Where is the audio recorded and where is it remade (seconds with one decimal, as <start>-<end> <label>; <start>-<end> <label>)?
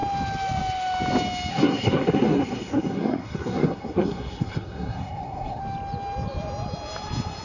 0.0-1.5 recorded; 1.5-5.6 remade; 5.6-7.4 recorded